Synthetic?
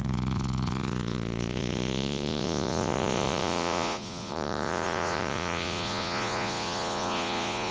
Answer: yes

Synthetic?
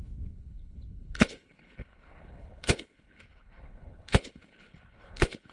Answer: yes